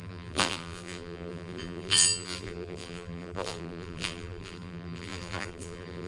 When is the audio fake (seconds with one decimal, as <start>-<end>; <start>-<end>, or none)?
0.0-6.1